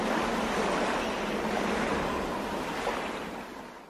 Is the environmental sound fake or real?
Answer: real